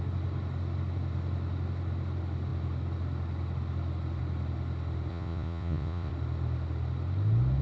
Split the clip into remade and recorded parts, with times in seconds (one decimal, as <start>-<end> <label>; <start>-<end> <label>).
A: 0.0-5.1 recorded; 5.1-6.1 remade; 6.1-7.6 recorded